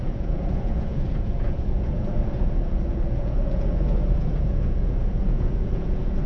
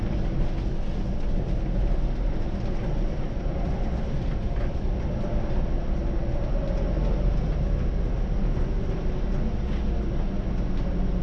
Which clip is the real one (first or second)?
second